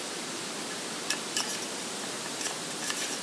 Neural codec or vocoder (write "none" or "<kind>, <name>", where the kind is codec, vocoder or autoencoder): none